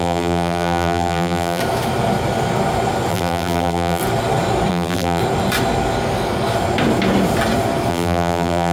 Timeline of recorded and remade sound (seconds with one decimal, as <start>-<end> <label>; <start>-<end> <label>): 0.0-1.6 remade; 1.6-3.1 recorded; 3.1-4.0 remade; 4.0-4.7 recorded; 4.7-5.2 remade; 5.2-7.9 recorded; 7.9-8.7 remade